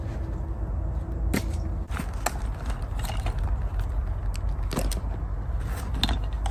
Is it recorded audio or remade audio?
recorded